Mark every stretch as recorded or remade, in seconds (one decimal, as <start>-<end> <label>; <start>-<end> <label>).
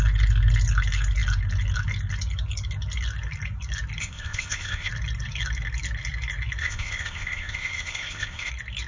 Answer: 0.0-4.0 recorded; 4.0-4.9 remade; 4.9-6.6 recorded; 6.6-8.5 remade; 8.5-8.9 recorded